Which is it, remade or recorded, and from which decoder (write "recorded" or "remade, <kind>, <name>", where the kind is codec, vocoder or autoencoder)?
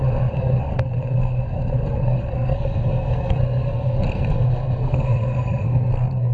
remade, codec, SNAC